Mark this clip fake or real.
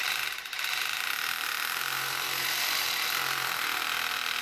fake